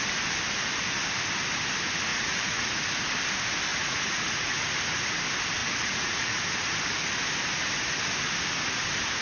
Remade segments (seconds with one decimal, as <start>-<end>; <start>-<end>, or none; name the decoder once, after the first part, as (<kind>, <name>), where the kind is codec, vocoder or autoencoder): 2.1-3.0 (vocoder, Vocos); 3.7-4.5; 5.6-6.4